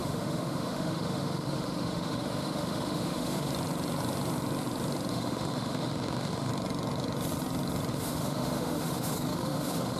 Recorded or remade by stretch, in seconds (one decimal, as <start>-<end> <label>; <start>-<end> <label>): 0.0-3.5 remade; 3.5-5.1 recorded; 5.1-6.5 remade; 6.5-7.9 recorded; 7.9-10.0 remade